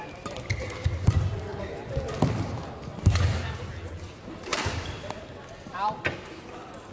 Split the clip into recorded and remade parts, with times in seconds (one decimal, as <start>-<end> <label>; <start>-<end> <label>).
0.0-6.9 recorded